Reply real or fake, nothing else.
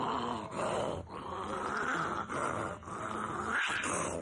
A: real